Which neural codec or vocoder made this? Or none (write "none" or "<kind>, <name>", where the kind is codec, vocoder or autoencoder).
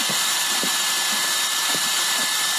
vocoder, BigVGAN v2